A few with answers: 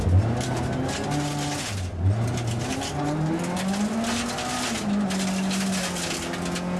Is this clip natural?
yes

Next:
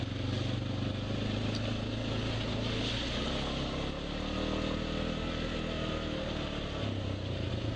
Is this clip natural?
yes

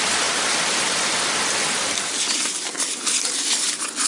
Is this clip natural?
yes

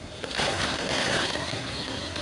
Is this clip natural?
no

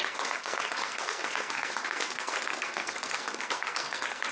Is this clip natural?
no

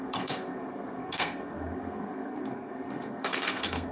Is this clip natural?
no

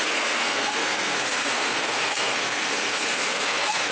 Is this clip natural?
no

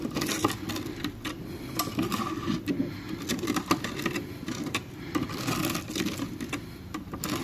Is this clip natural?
yes